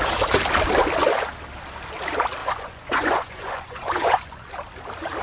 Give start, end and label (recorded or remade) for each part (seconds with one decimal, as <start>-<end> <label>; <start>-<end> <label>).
0.0-2.4 recorded; 2.4-4.5 remade; 4.5-5.2 recorded